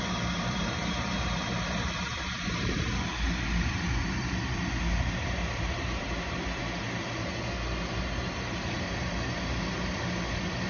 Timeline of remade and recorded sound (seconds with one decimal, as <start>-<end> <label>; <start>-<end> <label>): 0.0-6.6 remade; 6.6-8.0 recorded; 8.0-10.7 remade